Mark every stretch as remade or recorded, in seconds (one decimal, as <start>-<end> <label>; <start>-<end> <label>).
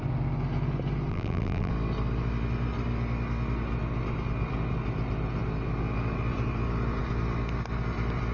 0.0-1.1 recorded; 1.1-1.7 remade; 1.7-8.3 recorded